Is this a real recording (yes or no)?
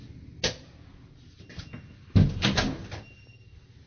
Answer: yes